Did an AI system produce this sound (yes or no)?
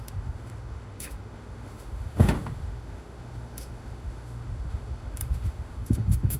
yes